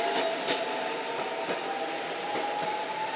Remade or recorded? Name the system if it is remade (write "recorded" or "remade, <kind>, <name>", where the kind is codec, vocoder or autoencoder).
recorded